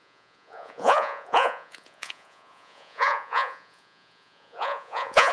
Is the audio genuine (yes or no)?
no